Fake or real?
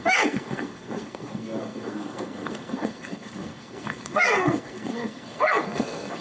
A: fake